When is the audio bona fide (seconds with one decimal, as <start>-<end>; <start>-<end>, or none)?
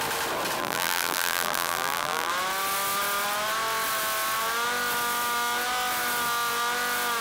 0.0-0.6; 2.3-7.2